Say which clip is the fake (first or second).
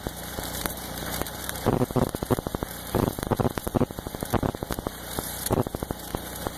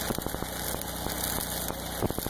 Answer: first